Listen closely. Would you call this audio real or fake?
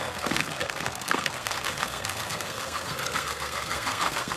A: fake